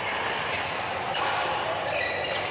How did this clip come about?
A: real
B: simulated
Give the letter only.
A